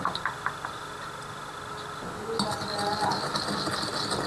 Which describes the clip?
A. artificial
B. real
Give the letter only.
B